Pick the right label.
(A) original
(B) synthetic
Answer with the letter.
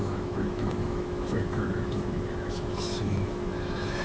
B